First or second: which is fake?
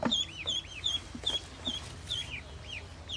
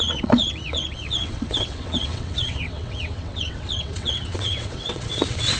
second